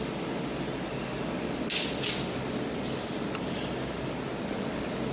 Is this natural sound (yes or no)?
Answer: yes